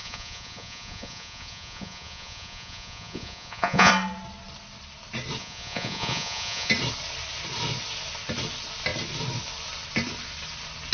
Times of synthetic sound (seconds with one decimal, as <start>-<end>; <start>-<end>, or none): 0.0-3.9; 5.4-6.7